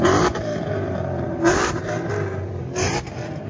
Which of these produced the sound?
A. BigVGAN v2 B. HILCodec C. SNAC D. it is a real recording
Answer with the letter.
A